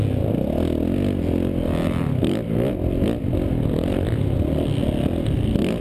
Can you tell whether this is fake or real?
real